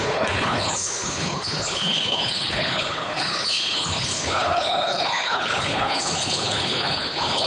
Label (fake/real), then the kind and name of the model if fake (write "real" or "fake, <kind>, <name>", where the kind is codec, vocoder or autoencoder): fake, codec, HILCodec